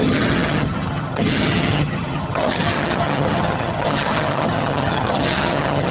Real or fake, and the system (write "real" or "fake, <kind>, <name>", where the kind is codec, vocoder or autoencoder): fake, vocoder, HiFi-GAN